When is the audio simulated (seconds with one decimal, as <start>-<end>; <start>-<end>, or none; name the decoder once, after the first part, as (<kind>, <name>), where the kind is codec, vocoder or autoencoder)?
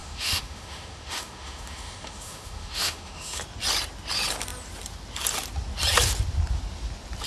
0.0-3.4 (autoencoder, DAC-VAE)